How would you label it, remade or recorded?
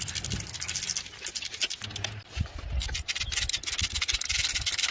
recorded